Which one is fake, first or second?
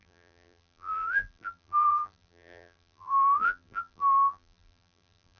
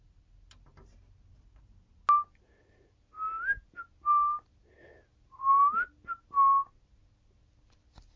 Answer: first